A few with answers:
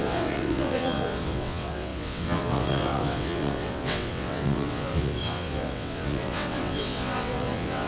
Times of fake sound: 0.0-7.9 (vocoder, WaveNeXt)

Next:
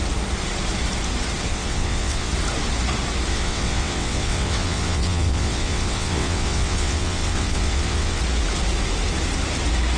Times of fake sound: 1.5-2.3 (vocoder, WaveNeXt); 3.3-8.2

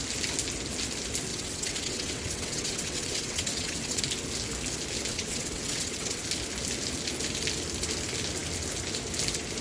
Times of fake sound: 1.3-4.0 (vocoder, WaveNeXt); 5.1-6.2

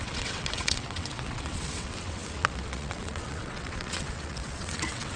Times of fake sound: 0.0-5.2 (vocoder, WaveNeXt)

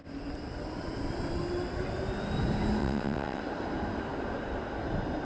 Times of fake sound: 2.8-3.4 (vocoder, WaveNeXt)

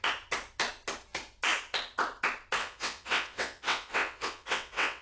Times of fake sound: 2.6-5.0 (vocoder, WaveNeXt)